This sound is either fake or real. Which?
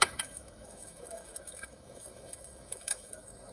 fake